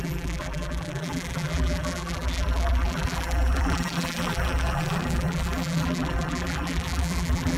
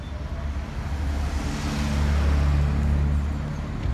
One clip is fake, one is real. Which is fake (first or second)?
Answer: first